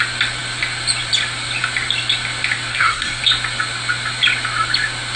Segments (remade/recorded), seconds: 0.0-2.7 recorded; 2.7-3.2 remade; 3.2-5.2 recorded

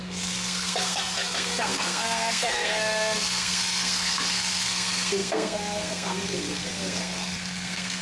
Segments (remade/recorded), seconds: 0.0-8.0 remade